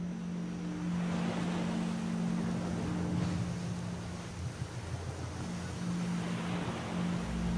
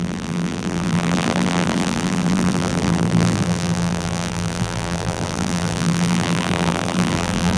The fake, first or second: second